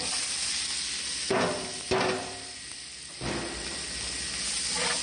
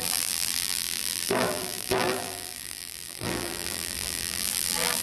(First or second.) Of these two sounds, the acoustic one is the first